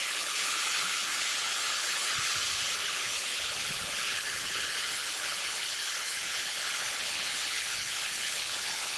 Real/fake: fake